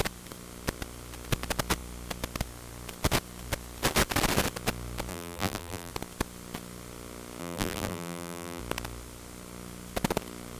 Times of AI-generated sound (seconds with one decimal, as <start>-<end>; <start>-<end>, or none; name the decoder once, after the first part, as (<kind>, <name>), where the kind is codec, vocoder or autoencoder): 5.1-5.9 (vocoder, BigVGAN v2); 7.4-8.6